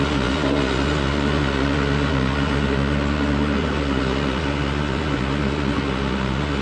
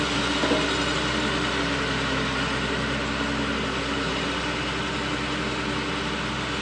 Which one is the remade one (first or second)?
first